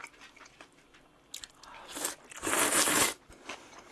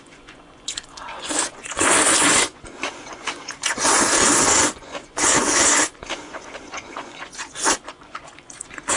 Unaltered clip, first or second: first